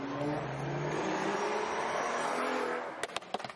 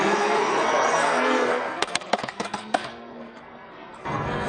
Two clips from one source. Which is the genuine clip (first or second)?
first